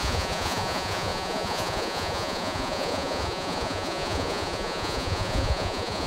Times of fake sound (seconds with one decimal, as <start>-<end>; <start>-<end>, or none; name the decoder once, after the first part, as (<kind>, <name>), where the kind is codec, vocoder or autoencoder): 0.0-6.1 (vocoder, Vocos)